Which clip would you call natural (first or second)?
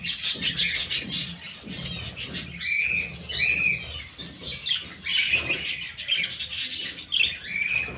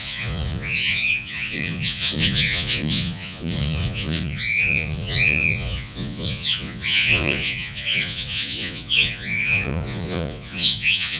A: first